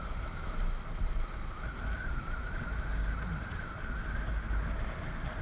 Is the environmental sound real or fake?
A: real